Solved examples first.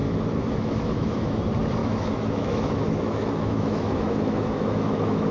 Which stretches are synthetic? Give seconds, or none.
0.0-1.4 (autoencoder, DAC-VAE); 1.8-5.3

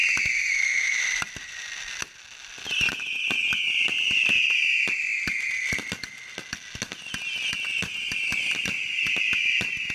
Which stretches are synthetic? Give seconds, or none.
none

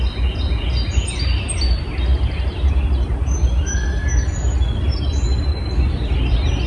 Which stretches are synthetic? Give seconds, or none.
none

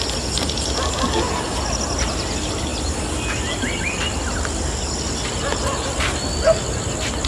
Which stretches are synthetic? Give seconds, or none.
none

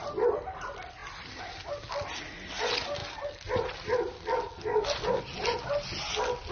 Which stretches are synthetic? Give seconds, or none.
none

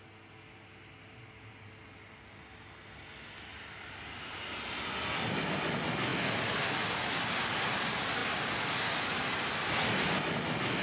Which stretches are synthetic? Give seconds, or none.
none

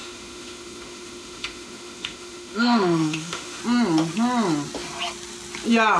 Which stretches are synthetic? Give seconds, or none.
0.0-3.6 (autoencoder, DAC-VAE)

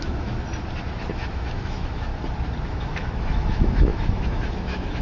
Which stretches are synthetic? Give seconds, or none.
0.0-0.5 (autoencoder, DAC-VAE); 1.1-2.1; 2.7-5.0